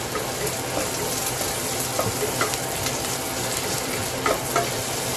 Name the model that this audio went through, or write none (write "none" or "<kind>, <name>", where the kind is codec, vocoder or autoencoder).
none